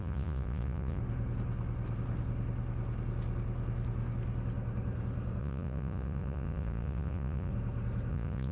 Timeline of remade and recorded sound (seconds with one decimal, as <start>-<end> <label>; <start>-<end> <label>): 0.0-1.0 remade; 1.0-5.4 recorded; 5.4-7.5 remade; 7.5-8.1 recorded; 8.1-8.5 remade